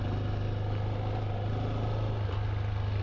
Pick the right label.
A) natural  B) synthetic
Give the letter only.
A